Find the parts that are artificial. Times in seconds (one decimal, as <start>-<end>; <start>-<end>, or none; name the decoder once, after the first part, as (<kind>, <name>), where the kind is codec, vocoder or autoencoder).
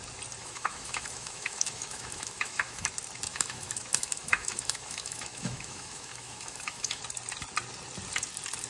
0.4-2.9 (autoencoder, DAC-VAE); 3.3-7.0